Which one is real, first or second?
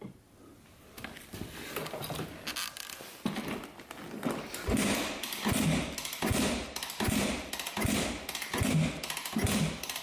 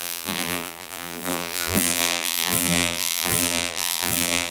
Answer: first